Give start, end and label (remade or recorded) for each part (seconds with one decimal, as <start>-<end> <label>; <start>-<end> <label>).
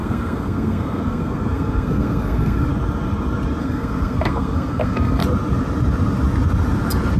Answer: 0.0-2.7 remade; 2.7-3.6 recorded; 3.6-5.2 remade; 5.2-7.2 recorded